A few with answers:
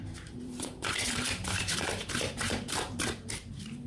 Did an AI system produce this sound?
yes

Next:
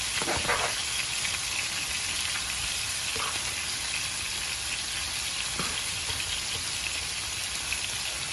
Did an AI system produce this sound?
no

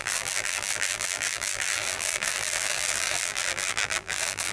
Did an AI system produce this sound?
yes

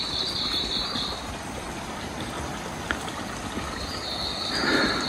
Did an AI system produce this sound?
no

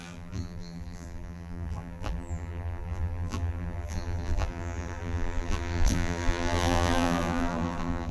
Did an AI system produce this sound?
yes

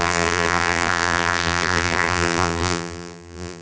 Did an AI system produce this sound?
yes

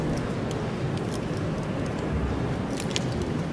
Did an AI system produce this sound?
no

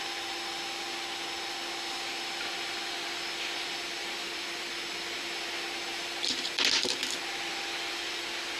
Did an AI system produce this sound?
no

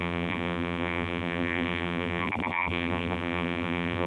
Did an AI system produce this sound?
yes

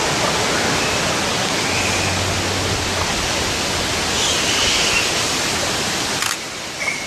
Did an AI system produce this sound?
no